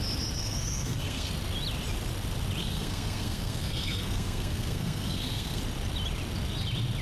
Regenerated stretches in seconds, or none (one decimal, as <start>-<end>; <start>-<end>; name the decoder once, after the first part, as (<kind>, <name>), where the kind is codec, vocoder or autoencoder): 0.4-1.3 (codec, SNAC); 2.6-5.6